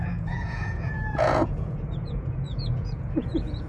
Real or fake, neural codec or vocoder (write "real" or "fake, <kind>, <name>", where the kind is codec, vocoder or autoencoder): fake, vocoder, Vocos